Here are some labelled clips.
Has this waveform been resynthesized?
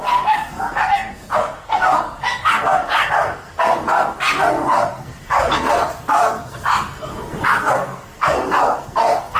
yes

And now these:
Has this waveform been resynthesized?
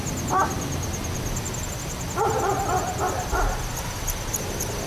no